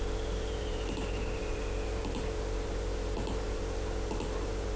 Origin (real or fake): fake